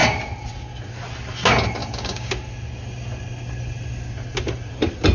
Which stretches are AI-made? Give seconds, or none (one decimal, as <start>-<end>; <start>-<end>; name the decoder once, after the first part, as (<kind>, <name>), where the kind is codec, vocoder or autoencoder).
1.8-2.3 (codec, DAC)

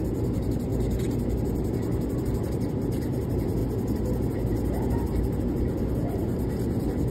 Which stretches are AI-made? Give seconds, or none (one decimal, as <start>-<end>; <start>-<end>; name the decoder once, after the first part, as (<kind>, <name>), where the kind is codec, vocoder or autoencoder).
none

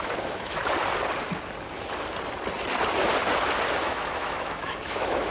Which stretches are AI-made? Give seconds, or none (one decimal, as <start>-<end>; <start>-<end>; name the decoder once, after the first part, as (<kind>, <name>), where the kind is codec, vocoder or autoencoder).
0.0-0.6 (autoencoder, DAC-VAE); 3.8-5.3